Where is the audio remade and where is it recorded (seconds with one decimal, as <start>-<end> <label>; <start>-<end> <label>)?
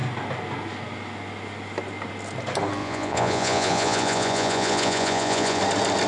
0.0-2.8 recorded; 2.8-5.6 remade; 5.6-6.1 recorded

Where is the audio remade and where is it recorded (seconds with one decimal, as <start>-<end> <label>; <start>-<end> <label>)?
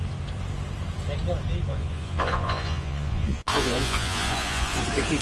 0.0-1.7 recorded; 1.7-4.8 remade; 4.8-5.2 recorded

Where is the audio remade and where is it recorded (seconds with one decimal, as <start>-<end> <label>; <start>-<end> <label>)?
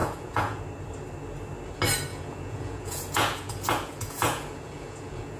0.0-0.6 remade; 0.6-2.1 recorded; 2.1-5.4 remade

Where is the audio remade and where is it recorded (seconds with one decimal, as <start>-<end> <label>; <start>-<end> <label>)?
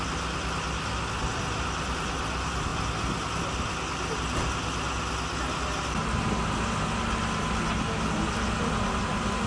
0.0-9.5 recorded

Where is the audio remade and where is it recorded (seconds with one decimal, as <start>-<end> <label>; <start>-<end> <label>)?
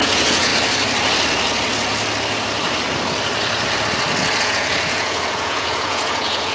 0.0-0.5 remade; 0.5-4.4 recorded; 4.4-6.5 remade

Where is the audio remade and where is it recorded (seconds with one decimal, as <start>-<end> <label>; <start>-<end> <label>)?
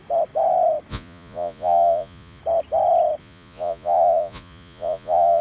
0.0-0.9 recorded; 0.9-2.4 remade; 2.4-3.2 recorded; 3.2-5.4 remade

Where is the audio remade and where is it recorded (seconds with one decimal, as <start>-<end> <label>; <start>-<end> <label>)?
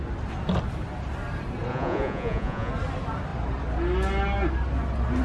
0.0-1.7 recorded; 1.7-2.7 remade; 2.7-5.2 recorded